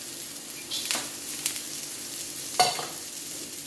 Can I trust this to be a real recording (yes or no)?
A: no